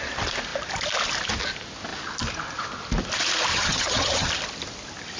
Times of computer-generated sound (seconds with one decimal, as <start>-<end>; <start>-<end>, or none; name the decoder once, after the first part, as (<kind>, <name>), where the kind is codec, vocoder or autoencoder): 3.5-4.3 (vocoder, HiFi-GAN)